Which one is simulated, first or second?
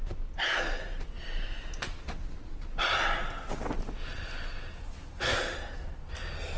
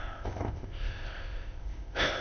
second